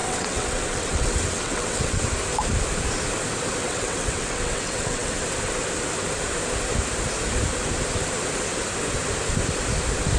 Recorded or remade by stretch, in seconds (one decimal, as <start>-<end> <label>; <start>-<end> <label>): 0.0-2.1 remade; 2.1-3.6 recorded; 3.6-5.1 remade; 5.1-10.2 recorded